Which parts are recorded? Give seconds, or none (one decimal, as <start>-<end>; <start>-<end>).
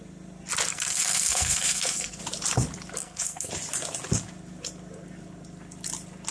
0.0-0.7; 2.2-3.0; 3.5-6.3